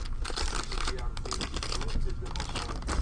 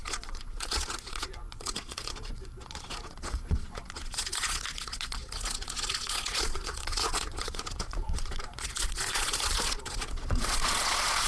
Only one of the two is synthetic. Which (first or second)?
second